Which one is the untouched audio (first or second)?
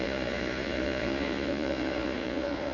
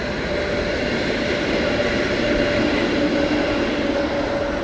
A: second